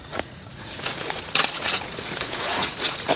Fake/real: fake